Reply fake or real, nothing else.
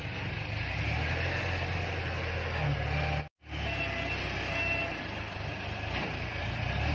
real